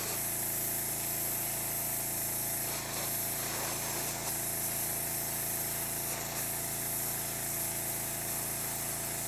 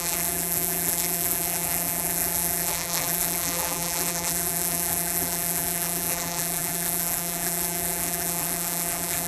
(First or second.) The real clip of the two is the first